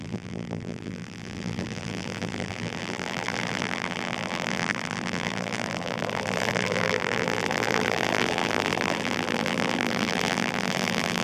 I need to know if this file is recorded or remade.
remade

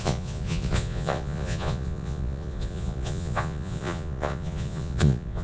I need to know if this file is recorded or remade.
remade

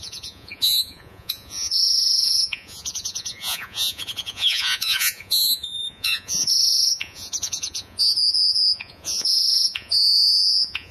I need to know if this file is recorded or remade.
remade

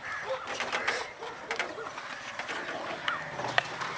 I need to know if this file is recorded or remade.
recorded